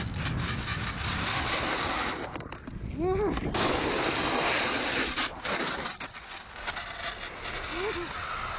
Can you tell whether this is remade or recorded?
recorded